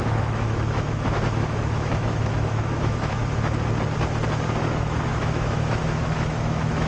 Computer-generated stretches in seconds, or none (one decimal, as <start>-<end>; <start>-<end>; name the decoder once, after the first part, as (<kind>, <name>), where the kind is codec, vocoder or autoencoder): 0.0-3.2 (autoencoder, DAC-VAE); 4.6-6.9